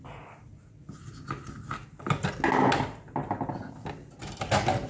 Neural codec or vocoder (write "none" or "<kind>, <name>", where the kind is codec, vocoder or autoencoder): none